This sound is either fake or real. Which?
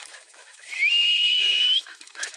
fake